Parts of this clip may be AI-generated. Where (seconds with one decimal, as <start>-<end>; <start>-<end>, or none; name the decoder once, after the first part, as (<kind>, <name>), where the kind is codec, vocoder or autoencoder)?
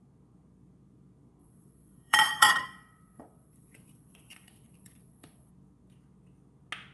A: 1.4-5.5 (vocoder, Vocos)